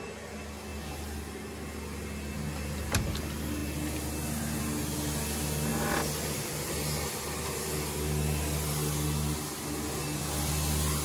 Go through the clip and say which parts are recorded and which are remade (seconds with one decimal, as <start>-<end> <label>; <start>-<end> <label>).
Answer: 0.0-11.0 recorded

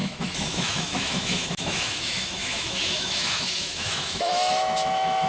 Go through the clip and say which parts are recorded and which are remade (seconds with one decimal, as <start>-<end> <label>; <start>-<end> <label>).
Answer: 0.0-5.3 remade

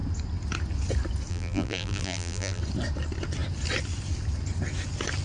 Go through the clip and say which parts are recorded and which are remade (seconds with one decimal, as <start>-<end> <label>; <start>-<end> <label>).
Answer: 0.0-1.3 recorded; 1.3-2.6 remade; 2.6-5.2 recorded

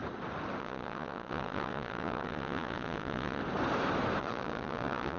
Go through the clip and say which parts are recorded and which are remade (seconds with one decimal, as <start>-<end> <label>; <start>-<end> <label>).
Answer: 0.0-0.6 recorded; 0.6-3.4 remade; 3.4-4.2 recorded; 4.2-5.2 remade

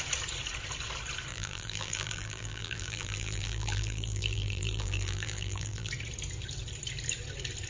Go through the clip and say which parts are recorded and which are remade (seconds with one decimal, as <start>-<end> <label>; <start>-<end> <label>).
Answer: 0.0-1.3 recorded; 1.3-5.9 remade; 5.9-7.7 recorded

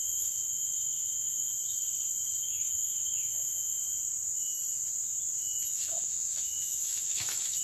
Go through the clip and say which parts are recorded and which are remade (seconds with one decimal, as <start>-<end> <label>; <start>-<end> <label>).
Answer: 0.0-1.5 remade; 1.5-2.4 recorded; 2.4-3.8 remade; 3.8-5.7 recorded; 5.7-7.6 remade

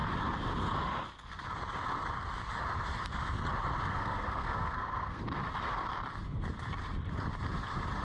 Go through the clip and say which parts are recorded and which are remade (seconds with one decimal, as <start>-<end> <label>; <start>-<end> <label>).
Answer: 0.0-3.9 recorded; 3.9-5.2 remade; 5.2-8.0 recorded